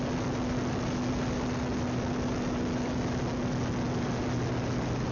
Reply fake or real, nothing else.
real